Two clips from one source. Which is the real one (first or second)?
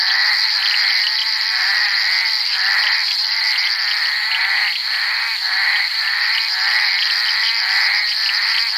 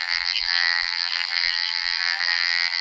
first